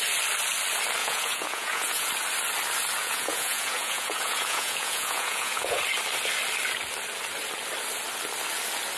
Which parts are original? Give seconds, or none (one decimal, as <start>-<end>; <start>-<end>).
0.0-1.0; 2.1-3.0; 5.8-9.0

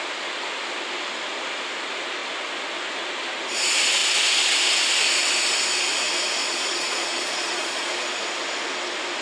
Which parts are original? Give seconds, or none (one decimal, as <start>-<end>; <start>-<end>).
0.0-6.4; 7.9-9.2

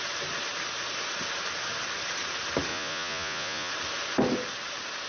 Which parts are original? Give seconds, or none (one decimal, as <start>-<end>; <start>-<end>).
0.0-2.7; 3.7-5.1

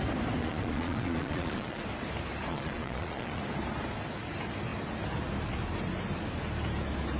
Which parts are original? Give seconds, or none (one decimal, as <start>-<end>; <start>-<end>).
0.0-0.4; 1.8-2.5; 3.4-7.2

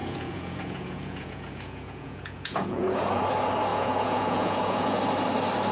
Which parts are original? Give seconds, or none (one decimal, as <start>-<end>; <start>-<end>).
3.2-3.7; 5.0-5.7

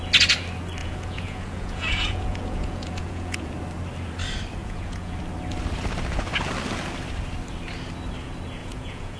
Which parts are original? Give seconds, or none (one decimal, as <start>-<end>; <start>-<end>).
0.0-0.8; 3.5-4.6; 5.1-8.6